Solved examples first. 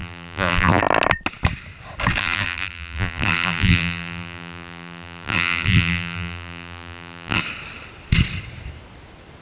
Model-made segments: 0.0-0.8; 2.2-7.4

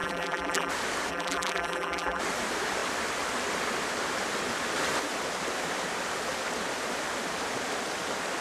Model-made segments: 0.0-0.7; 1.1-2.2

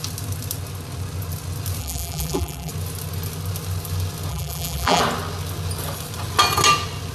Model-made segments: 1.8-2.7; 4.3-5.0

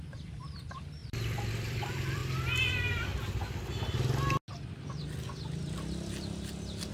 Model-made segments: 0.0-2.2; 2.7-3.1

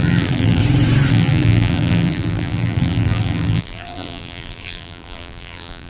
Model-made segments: 0.0-0.6; 1.1-5.9

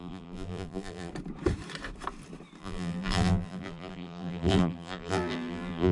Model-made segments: 0.0-1.1; 2.6-5.9

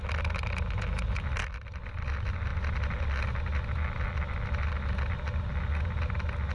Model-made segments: none

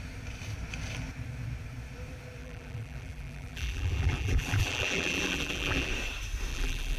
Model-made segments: 2.4-5.9; 6.5-7.0